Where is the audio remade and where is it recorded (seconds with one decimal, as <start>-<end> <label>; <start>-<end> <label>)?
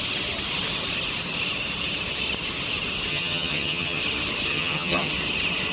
0.0-3.1 recorded; 3.1-4.0 remade; 4.0-4.5 recorded; 4.5-5.1 remade; 5.1-5.7 recorded